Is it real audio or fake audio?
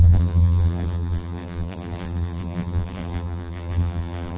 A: fake